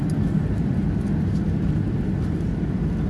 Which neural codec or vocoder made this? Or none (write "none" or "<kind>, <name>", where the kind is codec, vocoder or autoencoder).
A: none